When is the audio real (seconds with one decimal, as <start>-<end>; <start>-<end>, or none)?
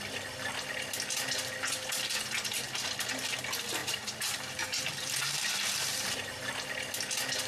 0.0-3.8; 6.5-7.5